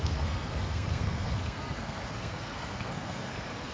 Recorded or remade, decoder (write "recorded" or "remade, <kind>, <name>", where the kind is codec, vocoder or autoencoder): remade, codec, SNAC